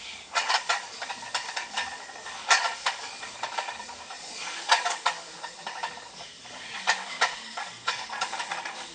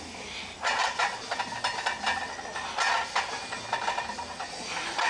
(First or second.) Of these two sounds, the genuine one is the second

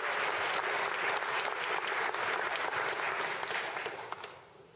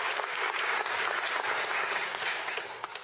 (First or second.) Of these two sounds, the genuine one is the first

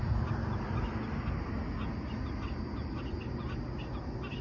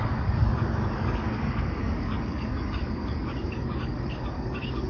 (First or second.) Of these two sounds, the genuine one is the first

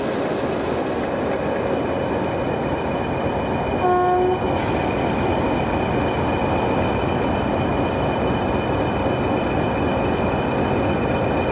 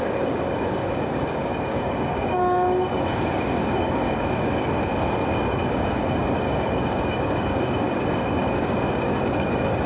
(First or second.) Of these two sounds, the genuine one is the first